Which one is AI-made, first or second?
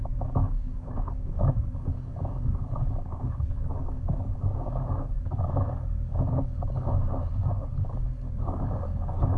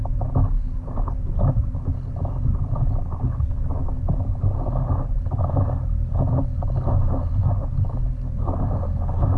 first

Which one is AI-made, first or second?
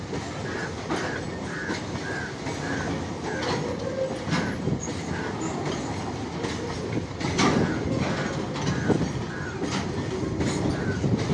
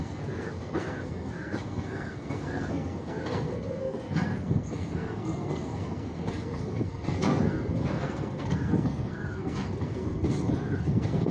second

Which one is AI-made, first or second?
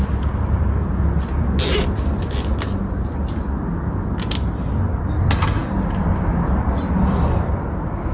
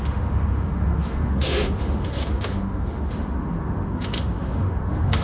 second